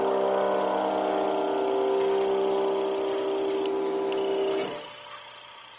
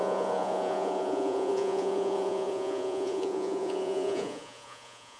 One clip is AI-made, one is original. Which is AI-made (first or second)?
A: second